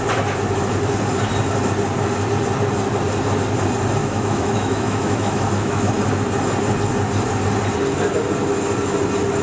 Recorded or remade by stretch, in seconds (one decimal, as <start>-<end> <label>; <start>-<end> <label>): 0.0-4.0 recorded; 4.0-5.9 remade; 5.9-9.4 recorded